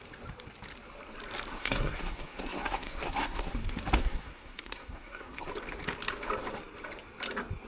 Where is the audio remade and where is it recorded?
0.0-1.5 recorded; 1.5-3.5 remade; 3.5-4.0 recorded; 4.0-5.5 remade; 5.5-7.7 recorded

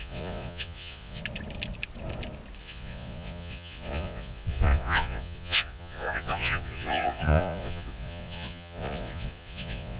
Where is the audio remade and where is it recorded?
0.0-1.2 remade; 1.2-2.6 recorded; 2.6-10.0 remade

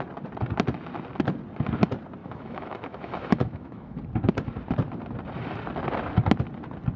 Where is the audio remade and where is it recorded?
0.0-2.2 recorded; 2.2-4.0 remade; 4.0-7.0 recorded

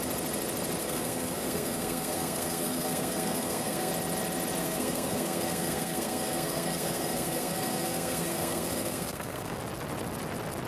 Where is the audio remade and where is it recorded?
0.0-0.8 recorded; 0.8-3.9 remade; 3.9-4.6 recorded; 4.6-9.6 remade; 9.6-10.7 recorded

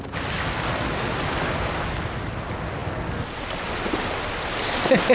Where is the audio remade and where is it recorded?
0.0-5.1 recorded

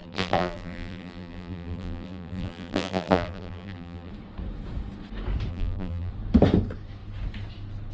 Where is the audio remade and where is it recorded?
0.0-4.1 remade; 4.1-5.5 recorded; 5.5-6.1 remade; 6.1-7.9 recorded